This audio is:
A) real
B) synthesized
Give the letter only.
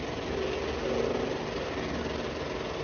A